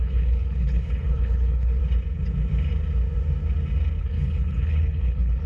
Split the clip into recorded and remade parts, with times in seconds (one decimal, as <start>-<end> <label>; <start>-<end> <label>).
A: 0.0-1.8 remade; 1.8-4.0 recorded; 4.0-5.5 remade